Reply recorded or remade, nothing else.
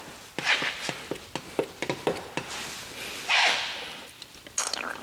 recorded